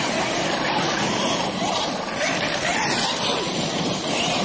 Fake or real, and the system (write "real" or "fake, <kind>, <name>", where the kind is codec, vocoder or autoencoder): real